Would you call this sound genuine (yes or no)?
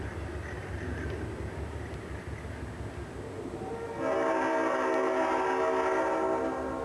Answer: yes